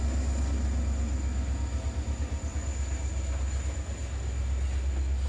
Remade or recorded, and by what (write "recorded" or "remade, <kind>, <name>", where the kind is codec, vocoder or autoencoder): recorded